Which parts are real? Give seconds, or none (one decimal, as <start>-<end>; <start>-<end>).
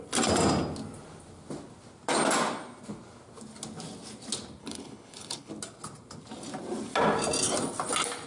0.0-4.6; 5.5-8.3